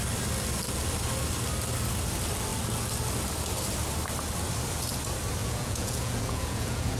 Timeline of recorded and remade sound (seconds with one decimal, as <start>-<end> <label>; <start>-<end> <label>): 0.0-5.4 recorded; 5.4-7.0 remade